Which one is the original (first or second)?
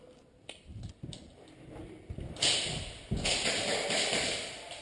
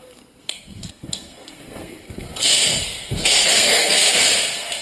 first